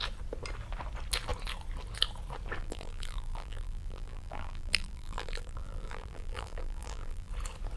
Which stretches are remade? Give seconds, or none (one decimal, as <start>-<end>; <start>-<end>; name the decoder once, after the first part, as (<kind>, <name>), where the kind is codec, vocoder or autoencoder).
2.6-7.3 (vocoder, BigVGAN v2)

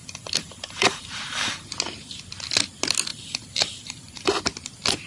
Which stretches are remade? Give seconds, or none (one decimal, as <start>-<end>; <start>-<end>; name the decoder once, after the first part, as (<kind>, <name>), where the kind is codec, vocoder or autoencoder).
0.0-1.7 (vocoder, BigVGAN v2); 3.1-4.4

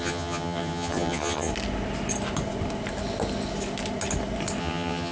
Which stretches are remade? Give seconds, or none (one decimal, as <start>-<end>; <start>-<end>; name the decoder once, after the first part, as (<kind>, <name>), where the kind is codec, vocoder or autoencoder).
0.0-1.5 (vocoder, HiFi-GAN); 4.6-5.1

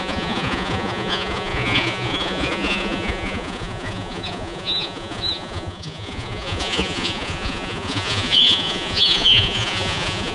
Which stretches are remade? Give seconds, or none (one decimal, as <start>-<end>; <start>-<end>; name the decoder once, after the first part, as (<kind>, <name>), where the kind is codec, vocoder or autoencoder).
0.0-10.3 (vocoder, Vocos)

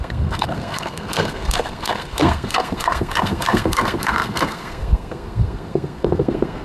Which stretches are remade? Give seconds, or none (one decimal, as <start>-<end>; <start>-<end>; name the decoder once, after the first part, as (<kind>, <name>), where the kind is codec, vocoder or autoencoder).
0.0-6.6 (codec, SNAC)

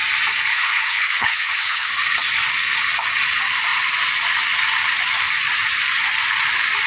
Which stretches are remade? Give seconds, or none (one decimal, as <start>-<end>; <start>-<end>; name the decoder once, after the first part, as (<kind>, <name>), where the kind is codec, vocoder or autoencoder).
0.5-1.9 (codec, HILCodec)

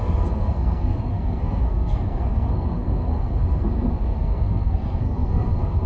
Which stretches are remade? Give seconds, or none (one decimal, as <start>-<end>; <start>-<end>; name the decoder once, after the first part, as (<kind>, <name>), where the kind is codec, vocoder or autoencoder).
0.0-5.9 (codec, SNAC)